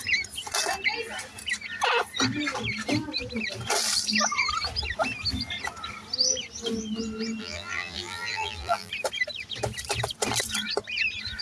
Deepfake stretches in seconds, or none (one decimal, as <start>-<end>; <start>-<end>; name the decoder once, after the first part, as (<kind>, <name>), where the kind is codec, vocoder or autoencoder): 7.4-8.9 (vocoder, BigVGAN v2)